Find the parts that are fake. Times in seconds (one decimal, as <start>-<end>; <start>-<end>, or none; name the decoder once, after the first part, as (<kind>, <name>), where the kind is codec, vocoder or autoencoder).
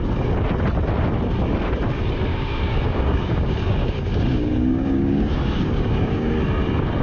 2.3-6.4 (codec, DAC)